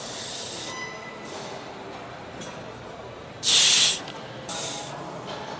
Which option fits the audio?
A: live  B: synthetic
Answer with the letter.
B